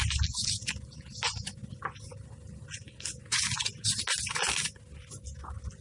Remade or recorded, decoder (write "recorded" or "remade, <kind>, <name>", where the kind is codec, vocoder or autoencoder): recorded